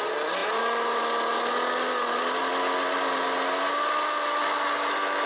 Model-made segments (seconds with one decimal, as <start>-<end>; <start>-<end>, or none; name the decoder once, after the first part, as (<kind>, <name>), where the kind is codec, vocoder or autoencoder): none